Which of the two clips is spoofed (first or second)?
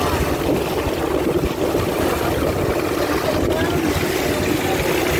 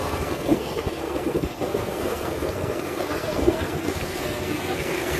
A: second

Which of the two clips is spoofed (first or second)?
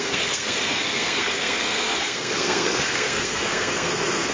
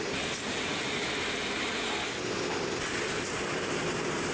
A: first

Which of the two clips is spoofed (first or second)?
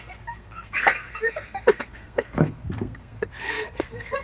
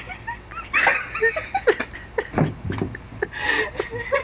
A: first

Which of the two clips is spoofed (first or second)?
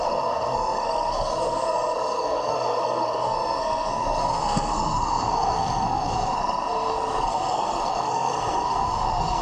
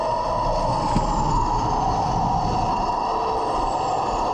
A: first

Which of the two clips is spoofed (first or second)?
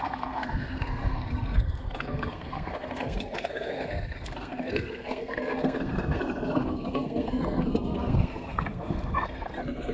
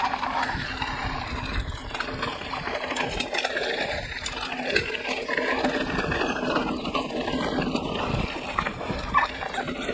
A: first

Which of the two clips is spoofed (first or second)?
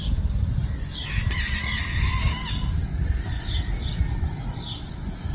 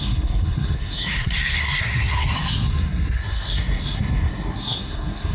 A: second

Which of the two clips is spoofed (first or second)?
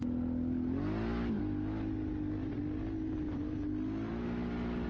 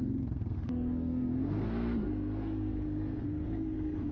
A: second